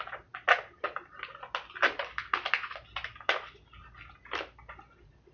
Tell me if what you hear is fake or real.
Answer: real